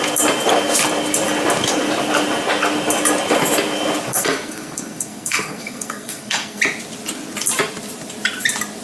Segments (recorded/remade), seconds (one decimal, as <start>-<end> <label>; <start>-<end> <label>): 0.0-4.1 recorded; 4.1-6.6 remade; 6.6-8.8 recorded